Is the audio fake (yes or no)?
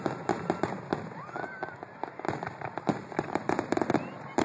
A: no